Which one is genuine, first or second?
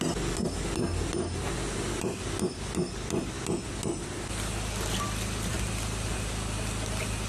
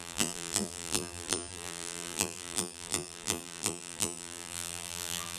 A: first